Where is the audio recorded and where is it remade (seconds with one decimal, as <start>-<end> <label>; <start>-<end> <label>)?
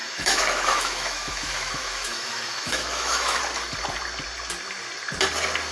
0.0-3.4 remade; 3.4-5.7 recorded